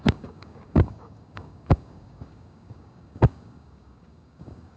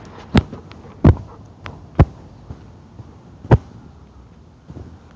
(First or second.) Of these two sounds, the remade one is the first